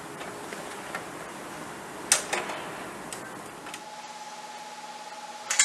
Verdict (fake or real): real